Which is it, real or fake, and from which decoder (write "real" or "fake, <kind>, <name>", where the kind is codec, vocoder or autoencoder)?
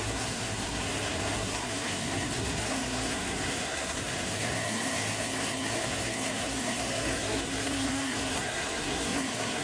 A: fake, codec, SNAC